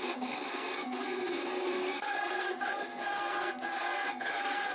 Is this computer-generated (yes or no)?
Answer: yes